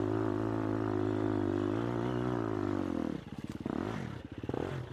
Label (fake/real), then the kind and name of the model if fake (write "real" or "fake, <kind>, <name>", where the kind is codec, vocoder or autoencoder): real